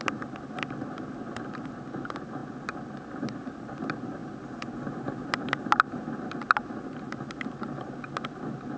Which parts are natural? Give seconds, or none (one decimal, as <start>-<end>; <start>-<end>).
0.0-8.8

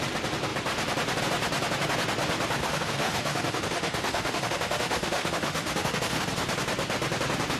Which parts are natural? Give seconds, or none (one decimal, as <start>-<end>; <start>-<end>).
0.0-2.6; 6.2-7.6

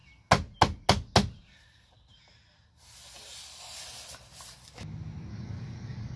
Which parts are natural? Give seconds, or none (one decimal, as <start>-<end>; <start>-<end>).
0.0-5.3